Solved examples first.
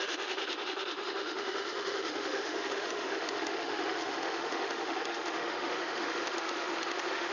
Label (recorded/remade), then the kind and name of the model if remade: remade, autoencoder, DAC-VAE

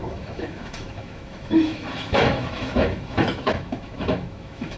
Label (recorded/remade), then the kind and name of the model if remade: remade, autoencoder, DAC-VAE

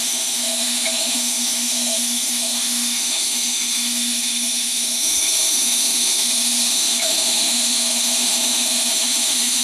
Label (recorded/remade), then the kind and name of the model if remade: remade, autoencoder, DAC-VAE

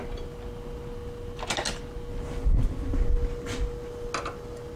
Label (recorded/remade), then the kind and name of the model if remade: recorded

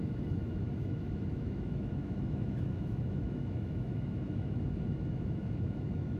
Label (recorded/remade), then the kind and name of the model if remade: remade, autoencoder, DAC-VAE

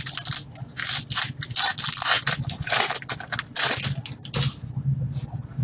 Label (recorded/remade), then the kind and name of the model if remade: recorded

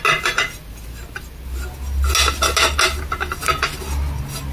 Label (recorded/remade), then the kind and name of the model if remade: recorded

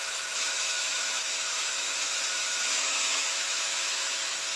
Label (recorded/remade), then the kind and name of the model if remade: remade, autoencoder, DAC-VAE